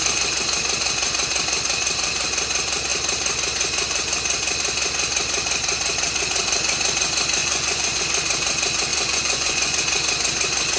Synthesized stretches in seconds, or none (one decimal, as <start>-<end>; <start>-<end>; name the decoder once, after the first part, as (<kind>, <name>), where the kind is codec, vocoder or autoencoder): 7.4-8.0 (vocoder, Vocos); 8.9-9.8